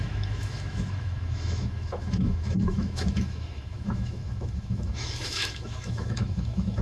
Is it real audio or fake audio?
fake